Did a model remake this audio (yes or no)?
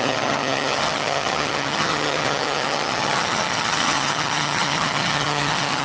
yes